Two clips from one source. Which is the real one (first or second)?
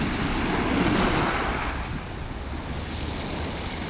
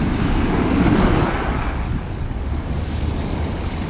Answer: first